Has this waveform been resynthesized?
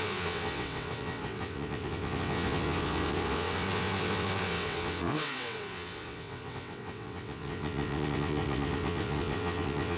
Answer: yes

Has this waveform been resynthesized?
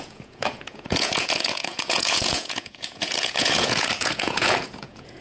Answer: yes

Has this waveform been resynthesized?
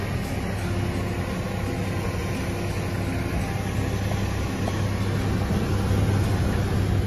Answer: no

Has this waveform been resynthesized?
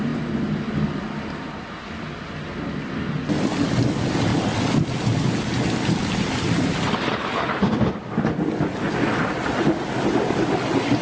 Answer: no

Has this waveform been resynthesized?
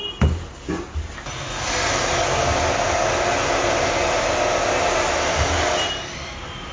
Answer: no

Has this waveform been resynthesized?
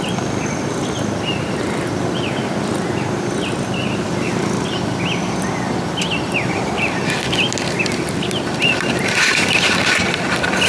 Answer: no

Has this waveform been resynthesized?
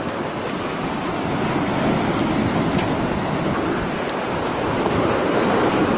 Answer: no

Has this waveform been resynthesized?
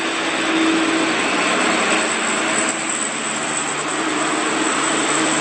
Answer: no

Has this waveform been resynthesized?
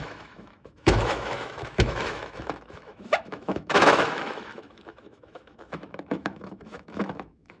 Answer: yes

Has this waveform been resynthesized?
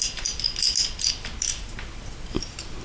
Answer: no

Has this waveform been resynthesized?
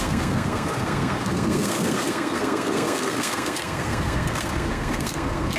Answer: yes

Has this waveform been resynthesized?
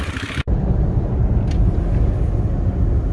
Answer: no